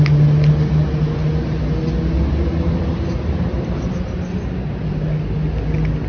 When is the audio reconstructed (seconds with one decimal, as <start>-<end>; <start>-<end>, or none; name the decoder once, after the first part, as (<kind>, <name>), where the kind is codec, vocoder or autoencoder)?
none